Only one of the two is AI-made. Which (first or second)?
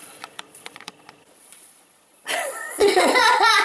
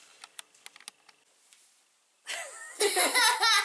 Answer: first